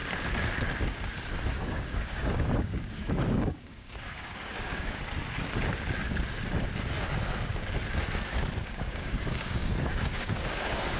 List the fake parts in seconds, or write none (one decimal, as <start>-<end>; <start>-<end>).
1.5-5.0; 8.6-11.0